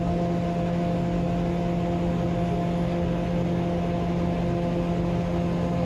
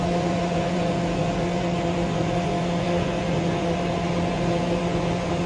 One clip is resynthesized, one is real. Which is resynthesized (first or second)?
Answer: second